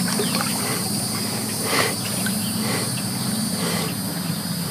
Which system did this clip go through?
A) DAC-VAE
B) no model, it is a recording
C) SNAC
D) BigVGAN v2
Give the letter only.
B